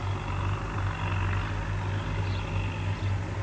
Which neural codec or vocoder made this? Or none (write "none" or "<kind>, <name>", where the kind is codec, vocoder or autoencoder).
none